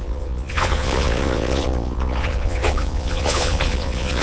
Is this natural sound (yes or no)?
no